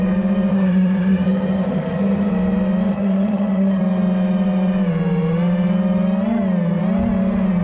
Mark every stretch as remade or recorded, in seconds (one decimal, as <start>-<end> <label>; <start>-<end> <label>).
0.0-0.5 recorded; 0.5-2.3 remade; 2.3-2.9 recorded; 2.9-3.8 remade; 3.8-7.6 recorded